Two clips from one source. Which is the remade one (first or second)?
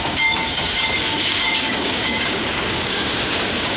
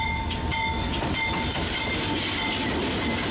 first